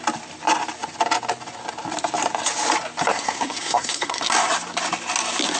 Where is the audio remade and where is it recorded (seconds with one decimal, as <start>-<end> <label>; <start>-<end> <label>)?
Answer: 0.0-3.1 recorded; 3.1-4.2 remade; 4.2-5.6 recorded